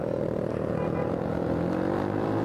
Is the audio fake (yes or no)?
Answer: no